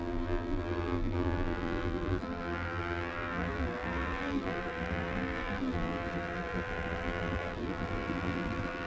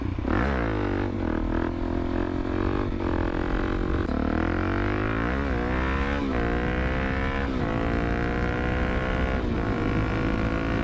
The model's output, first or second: first